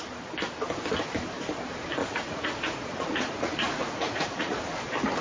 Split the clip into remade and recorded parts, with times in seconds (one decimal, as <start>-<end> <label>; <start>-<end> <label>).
0.0-2.0 recorded; 2.0-4.6 remade; 4.6-5.2 recorded